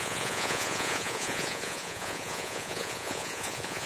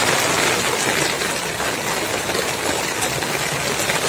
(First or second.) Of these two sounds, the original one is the second